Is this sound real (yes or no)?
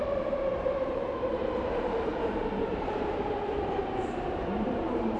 no